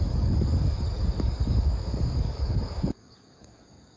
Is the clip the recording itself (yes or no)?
no